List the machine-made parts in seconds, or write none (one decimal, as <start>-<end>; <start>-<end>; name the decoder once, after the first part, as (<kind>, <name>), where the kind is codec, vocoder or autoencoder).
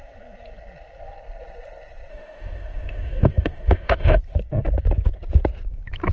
2.1-4.2 (autoencoder, DAC-VAE)